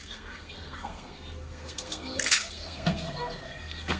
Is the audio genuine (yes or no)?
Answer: no